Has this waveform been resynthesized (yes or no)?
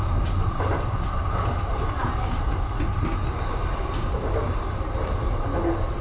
no